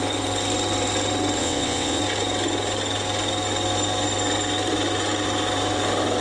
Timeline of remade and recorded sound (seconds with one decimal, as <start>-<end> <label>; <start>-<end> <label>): 0.0-1.4 recorded; 1.4-2.0 remade; 2.0-6.2 recorded

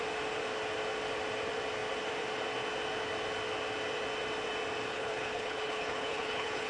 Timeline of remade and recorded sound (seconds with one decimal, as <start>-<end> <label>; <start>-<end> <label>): 0.0-4.9 recorded; 4.9-6.7 remade

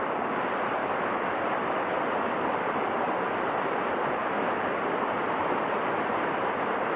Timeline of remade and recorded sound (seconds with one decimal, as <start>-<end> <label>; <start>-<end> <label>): 0.0-0.8 recorded; 0.8-1.3 remade; 1.3-7.0 recorded

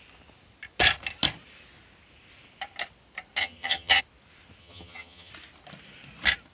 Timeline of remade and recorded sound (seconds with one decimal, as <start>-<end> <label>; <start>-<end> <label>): 0.0-3.4 recorded; 3.4-4.0 remade; 4.0-4.6 recorded; 4.6-5.3 remade; 5.3-6.5 recorded

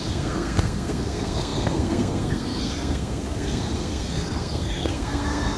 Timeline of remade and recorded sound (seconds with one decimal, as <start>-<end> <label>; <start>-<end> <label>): 0.0-5.6 remade

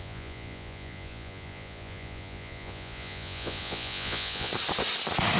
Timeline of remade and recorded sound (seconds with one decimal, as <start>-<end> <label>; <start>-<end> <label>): 0.0-4.5 remade; 4.5-5.4 recorded

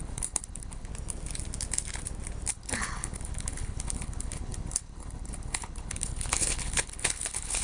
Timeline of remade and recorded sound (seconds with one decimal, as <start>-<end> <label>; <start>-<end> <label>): 0.0-0.9 remade; 0.9-2.5 recorded; 2.5-7.6 remade

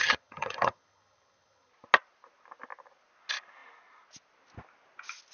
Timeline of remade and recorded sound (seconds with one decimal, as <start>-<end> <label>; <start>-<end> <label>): 0.0-1.7 remade; 1.7-5.3 recorded